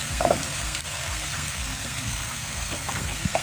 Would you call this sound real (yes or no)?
no